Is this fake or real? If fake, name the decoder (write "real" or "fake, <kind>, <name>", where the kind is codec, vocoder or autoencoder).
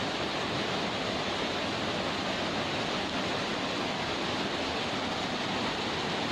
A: real